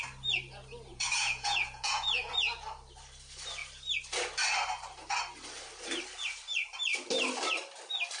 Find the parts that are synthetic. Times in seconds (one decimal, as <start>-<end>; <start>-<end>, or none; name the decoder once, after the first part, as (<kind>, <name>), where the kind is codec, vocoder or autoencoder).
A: 0.9-2.3 (vocoder, Vocos)